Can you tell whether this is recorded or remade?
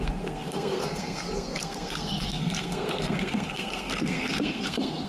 remade